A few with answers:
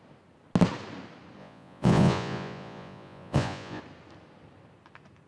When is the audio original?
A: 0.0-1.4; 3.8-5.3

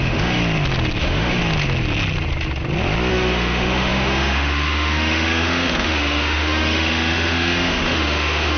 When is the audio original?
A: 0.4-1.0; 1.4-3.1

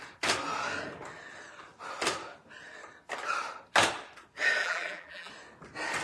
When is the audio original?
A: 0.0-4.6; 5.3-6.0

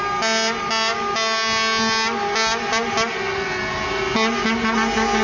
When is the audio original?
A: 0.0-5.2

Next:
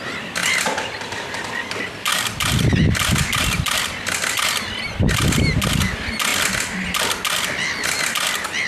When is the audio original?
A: 0.0-0.4; 1.5-2.1; 4.6-6.3; 7.0-8.7

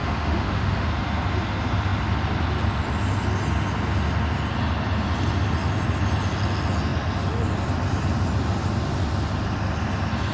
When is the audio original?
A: 0.9-10.3

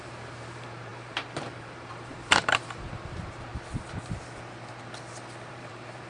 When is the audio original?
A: 3.5-5.5